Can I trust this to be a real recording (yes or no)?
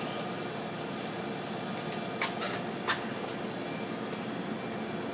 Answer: yes